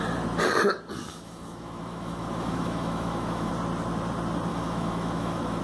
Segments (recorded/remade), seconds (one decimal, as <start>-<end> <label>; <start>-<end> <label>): 0.0-1.1 recorded; 1.1-3.5 remade; 3.5-4.5 recorded; 4.5-5.6 remade